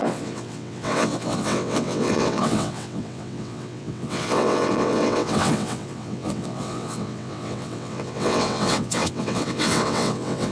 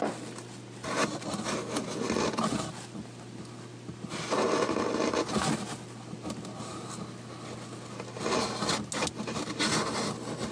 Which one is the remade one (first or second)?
first